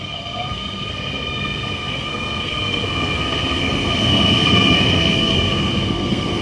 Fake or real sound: fake